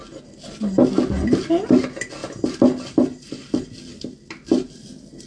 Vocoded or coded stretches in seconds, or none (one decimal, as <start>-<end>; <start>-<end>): none